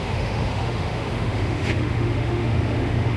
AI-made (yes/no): yes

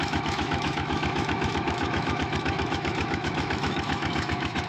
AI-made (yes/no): yes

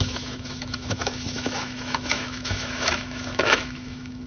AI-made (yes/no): yes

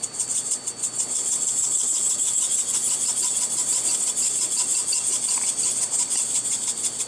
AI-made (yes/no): no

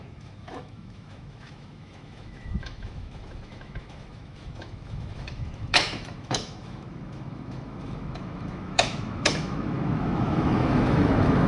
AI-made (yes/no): yes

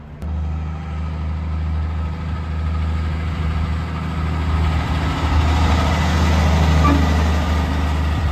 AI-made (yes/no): no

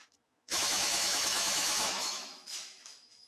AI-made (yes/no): yes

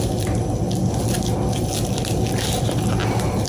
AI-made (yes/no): no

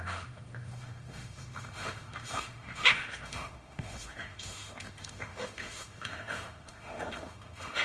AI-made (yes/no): yes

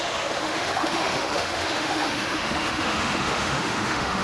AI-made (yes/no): yes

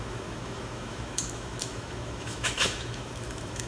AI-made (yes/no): yes